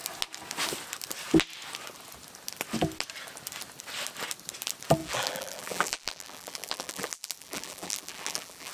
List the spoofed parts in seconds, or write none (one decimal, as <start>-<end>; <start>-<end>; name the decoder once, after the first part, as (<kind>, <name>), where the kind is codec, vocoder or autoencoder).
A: 5.0-8.7 (vocoder, BigVGAN v2)